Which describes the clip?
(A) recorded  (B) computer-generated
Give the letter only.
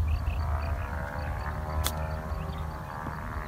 A